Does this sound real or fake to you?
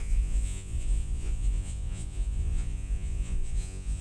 fake